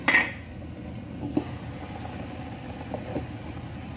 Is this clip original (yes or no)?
yes